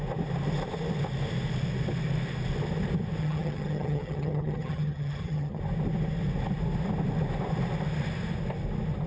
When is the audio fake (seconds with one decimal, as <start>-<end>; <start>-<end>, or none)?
3.2-5.6